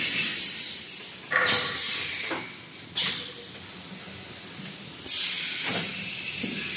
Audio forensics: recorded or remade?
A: remade